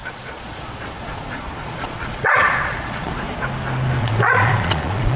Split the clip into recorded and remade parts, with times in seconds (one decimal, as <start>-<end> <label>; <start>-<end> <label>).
0.0-3.1 remade; 3.1-4.0 recorded; 4.0-5.2 remade